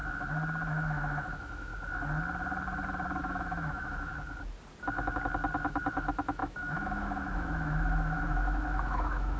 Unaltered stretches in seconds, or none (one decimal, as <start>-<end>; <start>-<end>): 0.0-0.7; 1.7-3.2; 4.1-5.9

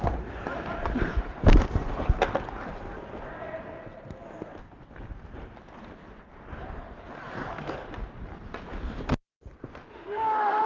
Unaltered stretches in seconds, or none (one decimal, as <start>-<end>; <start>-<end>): 0.0-9.9

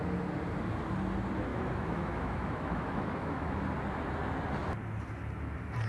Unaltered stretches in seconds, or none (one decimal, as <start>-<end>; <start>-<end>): 0.0-1.5; 3.6-5.9

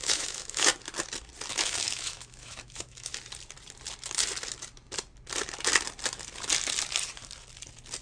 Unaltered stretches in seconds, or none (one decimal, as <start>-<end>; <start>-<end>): 0.7-1.5; 3.1-8.0